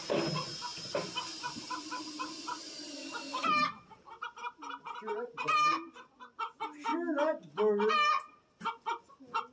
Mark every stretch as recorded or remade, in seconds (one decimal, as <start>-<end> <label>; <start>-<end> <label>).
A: 0.0-0.7 recorded; 0.7-5.9 remade; 5.9-9.5 recorded

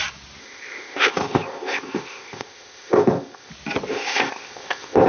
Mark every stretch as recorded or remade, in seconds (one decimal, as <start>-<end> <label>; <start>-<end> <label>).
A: 0.0-0.4 recorded; 0.4-3.5 remade; 3.5-3.9 recorded; 3.9-5.1 remade

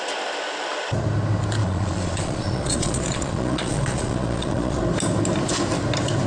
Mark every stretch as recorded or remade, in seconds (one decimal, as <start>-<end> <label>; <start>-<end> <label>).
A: 0.0-1.6 recorded; 1.6-4.8 remade; 4.8-6.3 recorded

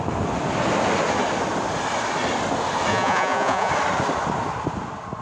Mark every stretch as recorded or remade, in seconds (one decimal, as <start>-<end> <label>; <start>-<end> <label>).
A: 0.0-2.9 recorded; 2.9-3.7 remade; 3.7-5.2 recorded

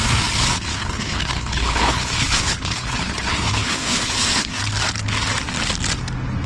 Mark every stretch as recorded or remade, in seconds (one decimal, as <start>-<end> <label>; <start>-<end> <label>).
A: 0.0-0.7 recorded; 0.7-4.6 remade; 4.6-6.5 recorded